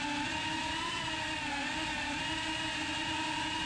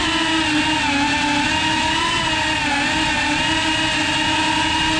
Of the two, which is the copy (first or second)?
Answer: first